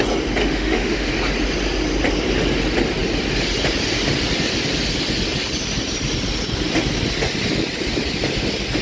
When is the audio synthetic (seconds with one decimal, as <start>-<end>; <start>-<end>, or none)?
0.4-1.1